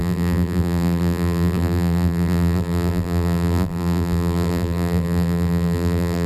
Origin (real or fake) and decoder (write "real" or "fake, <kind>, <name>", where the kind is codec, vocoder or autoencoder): fake, vocoder, BigVGAN v2